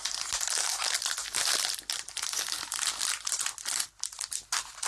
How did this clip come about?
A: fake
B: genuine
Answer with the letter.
B